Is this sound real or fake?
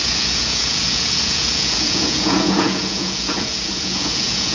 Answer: fake